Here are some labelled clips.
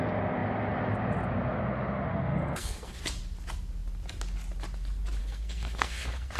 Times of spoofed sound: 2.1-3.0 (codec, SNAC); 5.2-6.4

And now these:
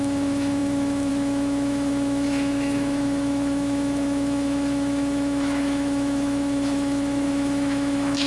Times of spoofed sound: 0.0-8.3 (autoencoder, DAC-VAE)

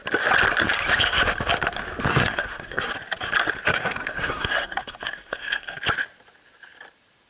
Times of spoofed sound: 2.1-2.9 (codec, SNAC); 3.7-5.8

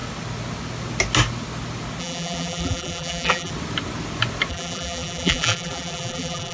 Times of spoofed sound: 2.0-3.5 (vocoder, BigVGAN v2); 4.5-6.5

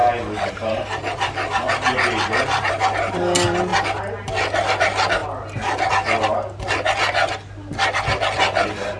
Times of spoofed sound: none

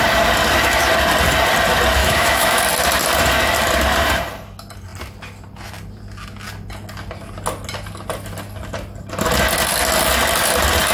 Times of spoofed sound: 2.0-2.6 (autoencoder, DAC-VAE)

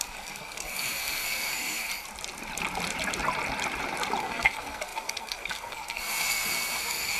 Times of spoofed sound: 0.0-1.9 (codec, SNAC); 4.2-7.2